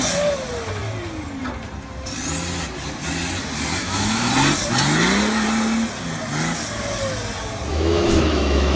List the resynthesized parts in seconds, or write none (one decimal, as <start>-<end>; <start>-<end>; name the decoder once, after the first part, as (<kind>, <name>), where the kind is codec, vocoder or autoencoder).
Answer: 3.8-4.3 (autoencoder, DAC-VAE); 7.7-8.8